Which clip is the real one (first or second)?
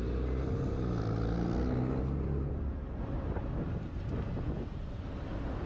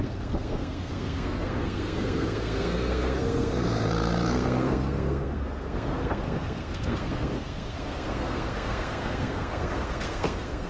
first